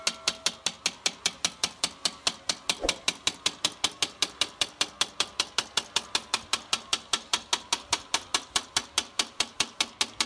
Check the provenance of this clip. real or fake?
real